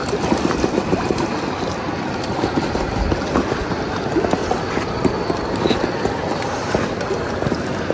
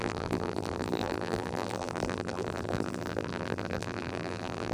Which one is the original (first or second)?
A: first